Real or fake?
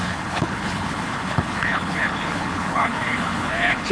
fake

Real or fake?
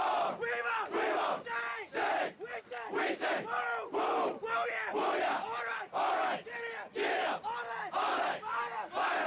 real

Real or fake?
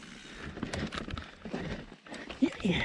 real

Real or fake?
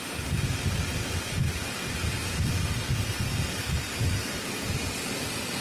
real